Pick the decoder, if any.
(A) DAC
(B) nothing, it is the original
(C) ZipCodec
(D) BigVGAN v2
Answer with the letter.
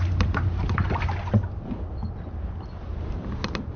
B